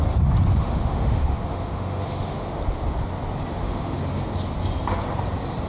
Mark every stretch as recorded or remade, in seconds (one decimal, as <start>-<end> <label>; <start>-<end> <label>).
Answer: 0.0-0.5 recorded; 0.5-2.6 remade; 2.6-3.5 recorded; 3.5-4.0 remade; 4.0-5.7 recorded

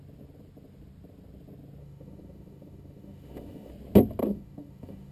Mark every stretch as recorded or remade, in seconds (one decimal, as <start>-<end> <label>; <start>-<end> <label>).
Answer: 0.0-1.8 recorded; 1.8-3.7 remade; 3.7-4.2 recorded; 4.2-5.1 remade

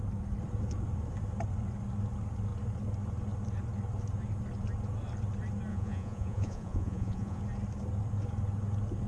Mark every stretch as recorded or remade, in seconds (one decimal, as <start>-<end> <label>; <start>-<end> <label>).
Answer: 0.0-5.7 recorded; 5.7-7.4 remade; 7.4-9.1 recorded

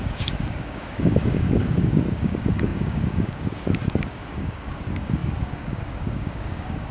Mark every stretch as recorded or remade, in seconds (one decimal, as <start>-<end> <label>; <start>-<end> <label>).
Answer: 0.0-6.9 remade

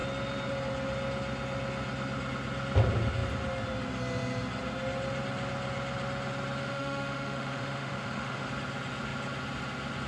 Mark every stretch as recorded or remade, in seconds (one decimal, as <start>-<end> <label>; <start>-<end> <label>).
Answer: 0.0-6.6 recorded; 6.6-8.5 remade; 8.5-10.1 recorded